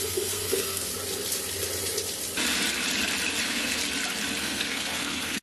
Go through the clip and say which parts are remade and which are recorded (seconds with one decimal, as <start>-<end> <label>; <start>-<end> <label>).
0.0-0.9 remade; 0.9-3.4 recorded; 3.4-3.8 remade; 3.8-4.4 recorded; 4.4-5.4 remade